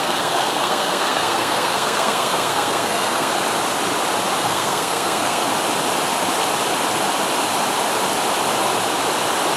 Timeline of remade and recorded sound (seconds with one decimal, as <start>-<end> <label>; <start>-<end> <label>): 0.0-3.3 remade; 3.3-4.4 recorded; 4.4-5.4 remade; 5.4-9.6 recorded